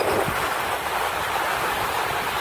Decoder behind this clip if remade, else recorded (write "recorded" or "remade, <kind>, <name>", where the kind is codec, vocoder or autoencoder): recorded